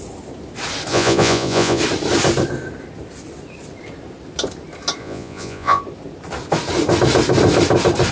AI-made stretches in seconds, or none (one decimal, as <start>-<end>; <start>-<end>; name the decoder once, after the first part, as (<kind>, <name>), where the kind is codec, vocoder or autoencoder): 0.9-1.8 (vocoder, Vocos); 5.0-5.8

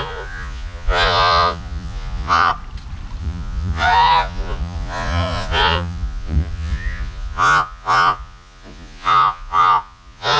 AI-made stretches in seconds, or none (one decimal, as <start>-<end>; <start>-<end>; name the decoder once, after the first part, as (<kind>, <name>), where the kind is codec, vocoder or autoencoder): 0.0-2.5 (vocoder, Vocos); 3.2-10.4